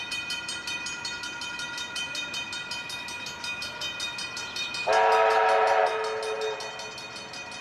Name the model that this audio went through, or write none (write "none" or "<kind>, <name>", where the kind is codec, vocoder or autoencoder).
none